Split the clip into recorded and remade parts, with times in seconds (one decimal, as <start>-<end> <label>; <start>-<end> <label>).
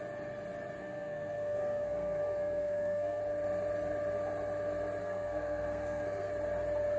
0.0-0.8 recorded; 0.8-3.2 remade; 3.2-5.0 recorded; 5.0-6.3 remade; 6.3-7.0 recorded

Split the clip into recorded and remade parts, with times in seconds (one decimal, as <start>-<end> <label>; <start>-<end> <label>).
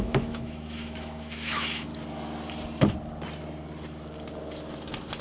0.0-1.9 remade; 1.9-5.2 recorded